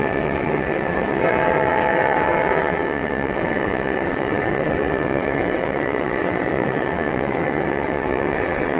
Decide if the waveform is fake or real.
fake